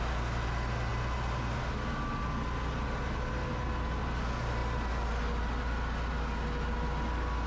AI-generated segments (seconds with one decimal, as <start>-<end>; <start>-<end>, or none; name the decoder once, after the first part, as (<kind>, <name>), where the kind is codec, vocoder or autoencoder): none